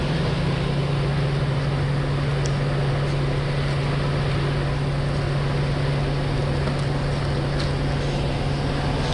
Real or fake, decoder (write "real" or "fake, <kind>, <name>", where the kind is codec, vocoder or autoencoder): real